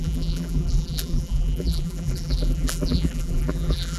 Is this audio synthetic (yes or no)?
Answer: yes